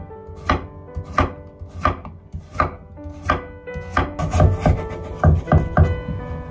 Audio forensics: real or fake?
real